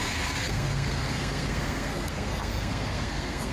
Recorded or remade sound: remade